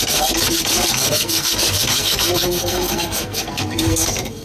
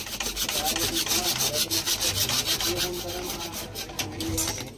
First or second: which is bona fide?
second